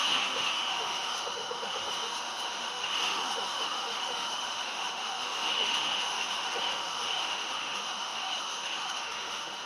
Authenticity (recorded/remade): remade